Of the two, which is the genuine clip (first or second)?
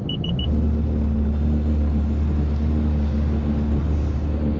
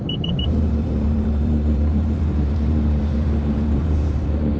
first